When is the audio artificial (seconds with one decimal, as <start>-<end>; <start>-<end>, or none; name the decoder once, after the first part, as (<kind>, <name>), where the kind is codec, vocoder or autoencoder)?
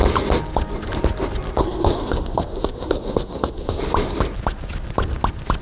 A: 1.6-3.8 (codec, SNAC)